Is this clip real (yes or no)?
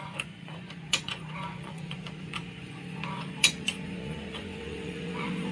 no